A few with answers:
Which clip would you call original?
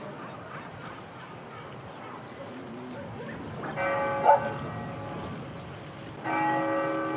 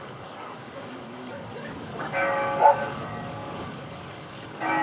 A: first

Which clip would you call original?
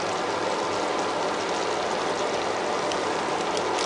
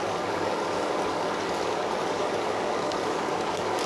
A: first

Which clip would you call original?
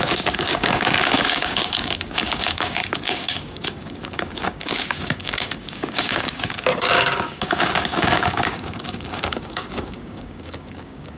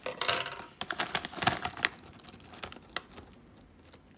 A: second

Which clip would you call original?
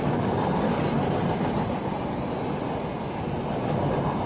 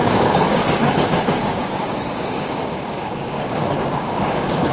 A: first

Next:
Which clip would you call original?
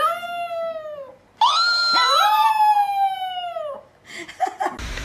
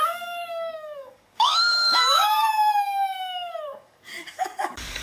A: first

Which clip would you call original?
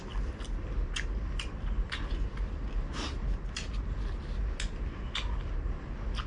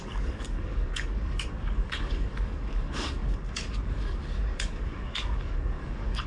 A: first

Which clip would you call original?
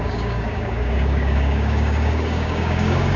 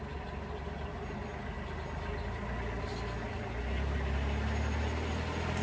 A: second